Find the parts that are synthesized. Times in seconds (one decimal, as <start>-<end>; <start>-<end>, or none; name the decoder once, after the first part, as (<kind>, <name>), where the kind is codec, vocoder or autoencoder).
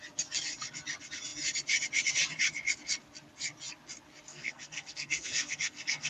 4.3-6.1 (codec, SNAC)